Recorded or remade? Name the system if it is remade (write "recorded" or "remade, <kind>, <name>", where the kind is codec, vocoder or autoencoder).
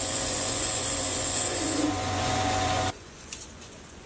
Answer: remade, vocoder, Vocos